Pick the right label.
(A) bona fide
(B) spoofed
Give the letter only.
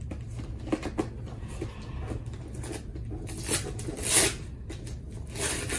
A